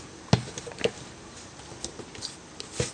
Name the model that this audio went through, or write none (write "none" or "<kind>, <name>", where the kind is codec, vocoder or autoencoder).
none